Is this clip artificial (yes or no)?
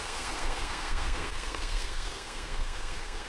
yes